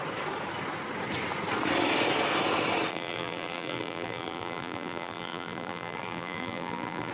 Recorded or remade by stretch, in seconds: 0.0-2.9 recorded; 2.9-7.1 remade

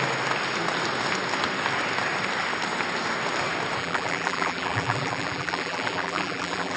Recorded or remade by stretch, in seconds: 0.0-3.8 recorded; 3.8-6.8 remade

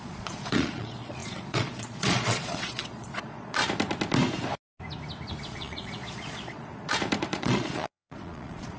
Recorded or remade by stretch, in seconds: 0.0-3.6 remade; 3.6-5.4 recorded; 5.4-6.7 remade; 6.7-7.2 recorded; 7.2-8.8 remade

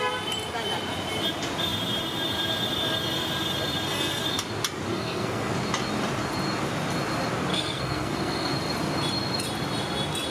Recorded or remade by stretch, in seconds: 0.0-4.9 recorded; 4.9-5.5 remade; 5.5-7.5 recorded; 7.5-8.5 remade; 8.5-10.3 recorded

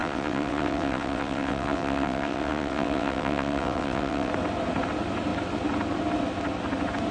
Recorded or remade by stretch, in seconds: 0.0-4.3 remade; 4.3-7.1 recorded